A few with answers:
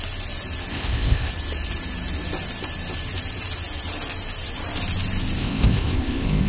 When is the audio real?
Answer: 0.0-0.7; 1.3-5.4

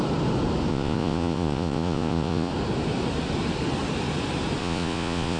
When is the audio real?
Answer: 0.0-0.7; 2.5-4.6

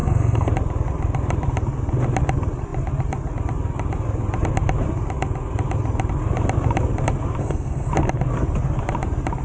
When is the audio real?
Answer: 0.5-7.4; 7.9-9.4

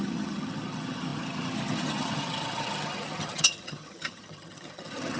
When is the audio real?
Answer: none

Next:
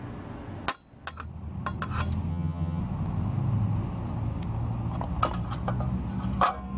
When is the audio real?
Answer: 0.0-2.3; 2.8-6.8